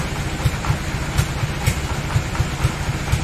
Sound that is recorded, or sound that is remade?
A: recorded